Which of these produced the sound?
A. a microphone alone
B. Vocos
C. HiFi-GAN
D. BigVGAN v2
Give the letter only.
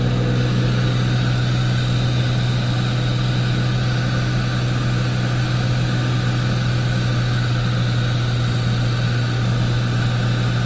A